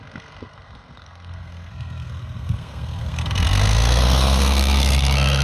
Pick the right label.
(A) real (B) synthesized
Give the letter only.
B